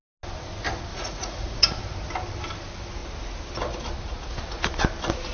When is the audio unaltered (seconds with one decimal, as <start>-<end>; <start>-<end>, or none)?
0.0-0.9; 1.8-5.3